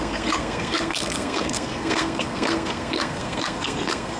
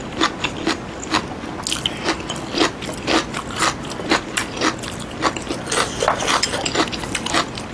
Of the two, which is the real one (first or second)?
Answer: second